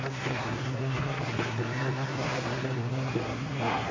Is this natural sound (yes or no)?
no